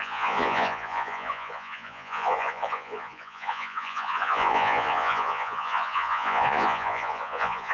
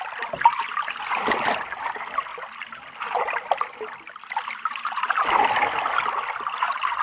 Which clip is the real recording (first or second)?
second